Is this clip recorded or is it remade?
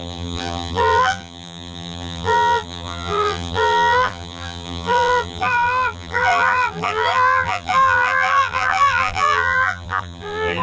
remade